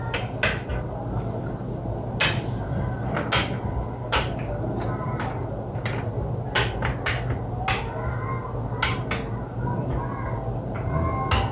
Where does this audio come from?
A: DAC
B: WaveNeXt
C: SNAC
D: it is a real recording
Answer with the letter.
D